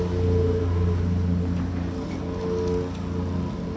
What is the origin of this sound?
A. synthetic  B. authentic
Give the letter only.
B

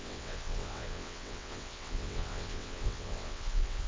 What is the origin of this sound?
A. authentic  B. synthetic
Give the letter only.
B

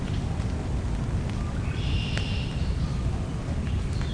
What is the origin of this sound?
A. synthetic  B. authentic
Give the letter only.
B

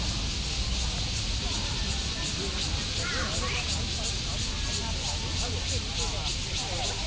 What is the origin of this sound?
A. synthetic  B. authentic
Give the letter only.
B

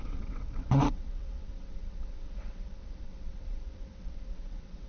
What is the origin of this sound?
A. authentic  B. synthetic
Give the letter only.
B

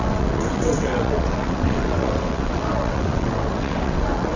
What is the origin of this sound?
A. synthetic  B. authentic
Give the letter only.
A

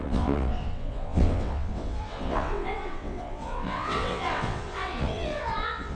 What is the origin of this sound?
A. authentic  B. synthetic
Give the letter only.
B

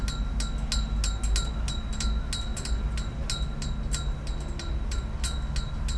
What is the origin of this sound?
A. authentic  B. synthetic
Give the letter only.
A